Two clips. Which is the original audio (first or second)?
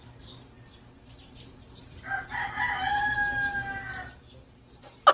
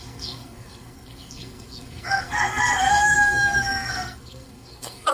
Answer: first